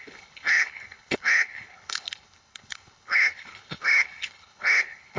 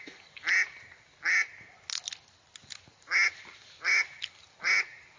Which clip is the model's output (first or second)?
first